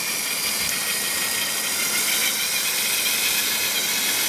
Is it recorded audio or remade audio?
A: recorded